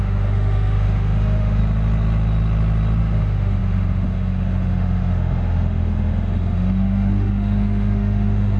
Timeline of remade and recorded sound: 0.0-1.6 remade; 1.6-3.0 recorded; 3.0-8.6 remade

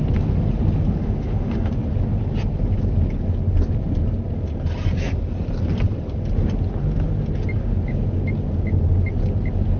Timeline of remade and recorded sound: 0.0-1.0 recorded; 1.0-1.7 remade; 1.7-9.8 recorded

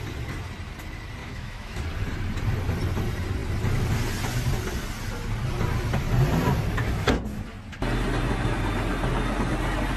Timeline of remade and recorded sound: 0.0-1.2 recorded; 1.2-1.8 remade; 1.8-10.0 recorded

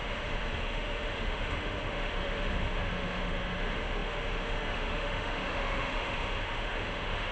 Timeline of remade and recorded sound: 0.0-7.3 remade